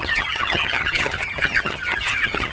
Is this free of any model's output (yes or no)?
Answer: no